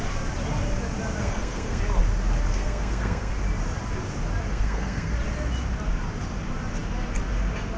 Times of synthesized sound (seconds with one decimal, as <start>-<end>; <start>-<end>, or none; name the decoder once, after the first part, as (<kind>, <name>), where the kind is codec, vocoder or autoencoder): 1.2-1.8 (codec, SNAC); 2.5-3.3; 4.5-5.1